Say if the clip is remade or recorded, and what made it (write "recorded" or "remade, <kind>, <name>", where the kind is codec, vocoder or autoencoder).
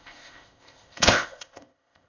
remade, codec, ZipCodec